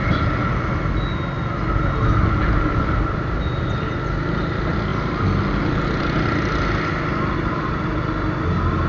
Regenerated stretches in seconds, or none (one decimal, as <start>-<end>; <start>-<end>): none